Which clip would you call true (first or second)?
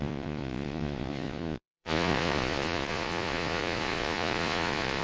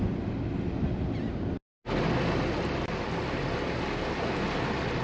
second